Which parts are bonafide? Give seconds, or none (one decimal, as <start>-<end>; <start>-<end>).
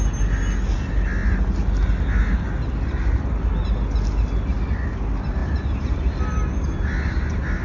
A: 0.0-5.4; 6.2-7.6